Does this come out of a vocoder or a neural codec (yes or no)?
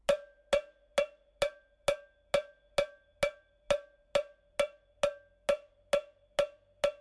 no